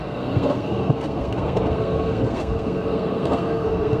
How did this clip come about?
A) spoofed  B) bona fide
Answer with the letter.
A